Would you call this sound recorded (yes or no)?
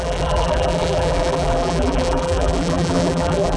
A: no